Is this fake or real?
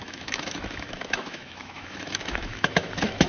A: fake